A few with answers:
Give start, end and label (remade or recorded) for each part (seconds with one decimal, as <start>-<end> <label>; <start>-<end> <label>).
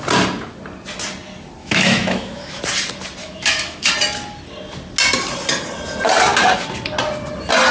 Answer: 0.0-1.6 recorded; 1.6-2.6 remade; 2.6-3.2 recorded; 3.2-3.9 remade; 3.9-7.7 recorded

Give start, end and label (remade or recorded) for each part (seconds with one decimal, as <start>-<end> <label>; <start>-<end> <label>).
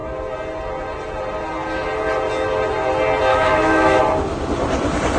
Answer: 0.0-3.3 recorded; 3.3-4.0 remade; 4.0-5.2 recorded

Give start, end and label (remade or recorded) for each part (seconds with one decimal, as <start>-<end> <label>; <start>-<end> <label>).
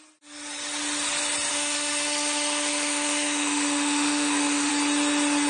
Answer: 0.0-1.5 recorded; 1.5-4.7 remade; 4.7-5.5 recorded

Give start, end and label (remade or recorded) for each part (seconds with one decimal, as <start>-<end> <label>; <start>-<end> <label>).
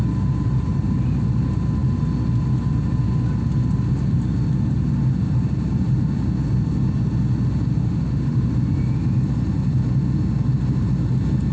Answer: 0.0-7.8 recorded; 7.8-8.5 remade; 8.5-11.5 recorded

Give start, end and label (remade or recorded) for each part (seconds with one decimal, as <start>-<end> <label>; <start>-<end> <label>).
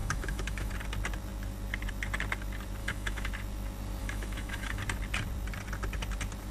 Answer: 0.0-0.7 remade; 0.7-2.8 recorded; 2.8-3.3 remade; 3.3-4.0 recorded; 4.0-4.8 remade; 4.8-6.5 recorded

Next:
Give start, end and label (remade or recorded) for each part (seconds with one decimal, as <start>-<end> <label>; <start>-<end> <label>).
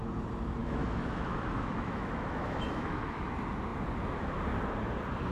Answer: 0.0-0.6 recorded; 0.6-3.2 remade; 3.2-5.3 recorded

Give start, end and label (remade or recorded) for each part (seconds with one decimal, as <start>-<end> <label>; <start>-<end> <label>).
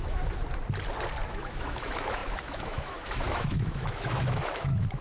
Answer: 0.0-0.4 remade; 0.4-1.3 recorded; 1.3-5.0 remade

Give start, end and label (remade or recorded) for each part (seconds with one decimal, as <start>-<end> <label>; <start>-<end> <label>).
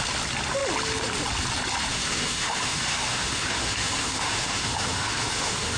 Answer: 0.0-1.9 recorded; 1.9-5.8 remade